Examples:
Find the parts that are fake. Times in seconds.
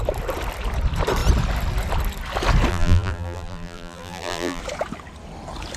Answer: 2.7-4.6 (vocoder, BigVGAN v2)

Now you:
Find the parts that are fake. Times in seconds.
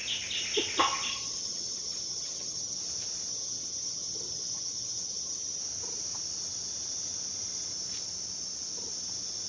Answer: 1.1-2.8 (vocoder, HiFi-GAN); 3.3-5.6